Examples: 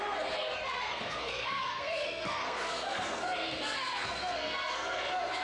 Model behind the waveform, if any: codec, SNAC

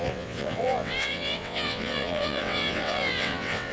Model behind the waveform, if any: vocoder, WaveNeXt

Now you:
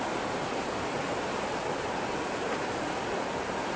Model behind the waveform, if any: none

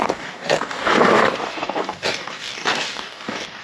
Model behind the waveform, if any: codec, DAC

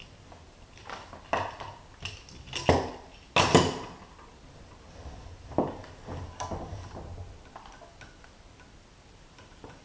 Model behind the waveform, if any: none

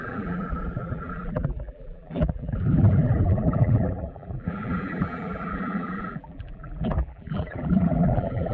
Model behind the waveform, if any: vocoder, BigVGAN v2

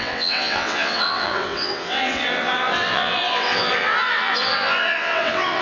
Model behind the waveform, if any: vocoder, WaveNeXt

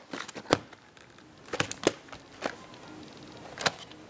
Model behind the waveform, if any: none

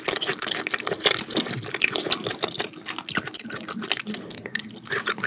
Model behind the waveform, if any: none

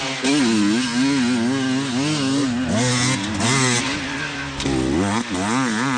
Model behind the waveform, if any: none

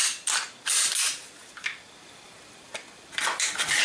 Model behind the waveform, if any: none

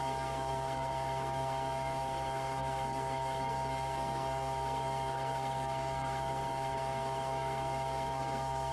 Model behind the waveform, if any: codec, SNAC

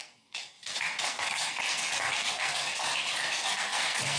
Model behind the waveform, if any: codec, SNAC